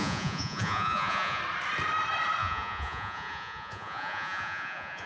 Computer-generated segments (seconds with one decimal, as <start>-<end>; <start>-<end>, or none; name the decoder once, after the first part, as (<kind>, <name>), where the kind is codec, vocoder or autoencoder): 0.0-1.4 (vocoder, Vocos); 2.4-5.1